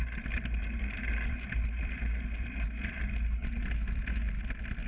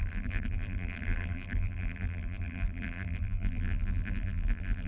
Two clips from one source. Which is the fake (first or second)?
second